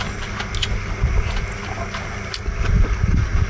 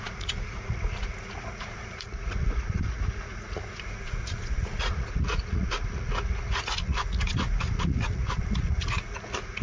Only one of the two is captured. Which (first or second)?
first